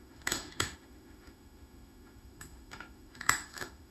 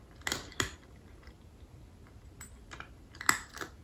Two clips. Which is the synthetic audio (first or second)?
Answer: first